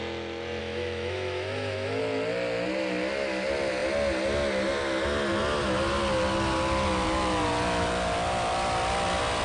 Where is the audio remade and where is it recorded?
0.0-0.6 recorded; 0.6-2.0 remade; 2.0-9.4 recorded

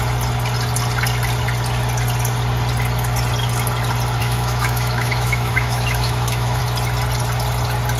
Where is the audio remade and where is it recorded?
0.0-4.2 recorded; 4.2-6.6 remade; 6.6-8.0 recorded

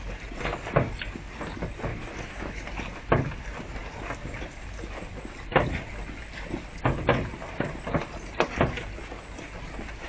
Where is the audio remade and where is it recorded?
0.0-1.9 recorded; 1.9-2.6 remade; 2.6-10.1 recorded

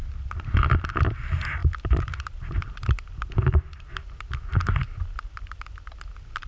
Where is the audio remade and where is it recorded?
0.0-6.5 recorded

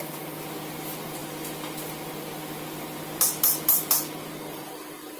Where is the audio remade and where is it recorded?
0.0-5.2 recorded

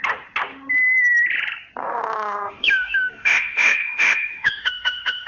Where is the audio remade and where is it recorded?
0.0-1.8 recorded; 1.8-5.3 remade

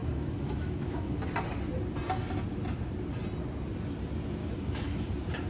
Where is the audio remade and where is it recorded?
0.0-1.2 remade; 1.2-4.4 recorded; 4.4-5.0 remade; 5.0-5.5 recorded